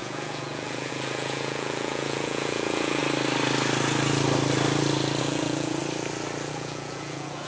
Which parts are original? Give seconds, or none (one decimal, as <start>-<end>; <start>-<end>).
3.0-5.2; 5.8-6.5